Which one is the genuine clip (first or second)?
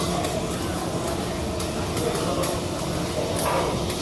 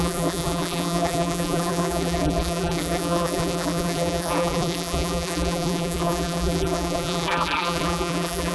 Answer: first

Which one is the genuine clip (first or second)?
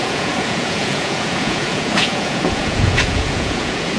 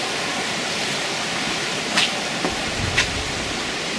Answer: second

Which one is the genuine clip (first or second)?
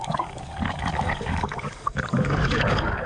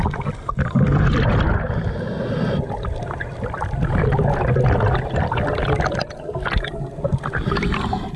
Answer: second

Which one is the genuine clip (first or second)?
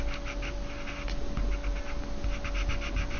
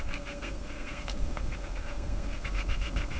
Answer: first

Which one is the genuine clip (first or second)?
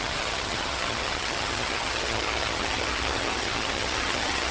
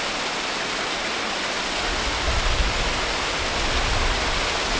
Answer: second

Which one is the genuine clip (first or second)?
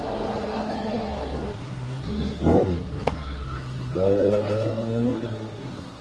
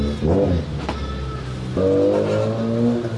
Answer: second